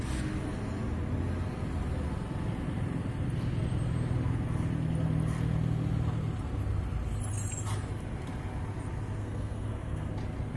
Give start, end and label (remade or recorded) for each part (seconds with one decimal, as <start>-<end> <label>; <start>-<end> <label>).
0.0-9.2 recorded; 9.2-10.1 remade; 10.1-10.6 recorded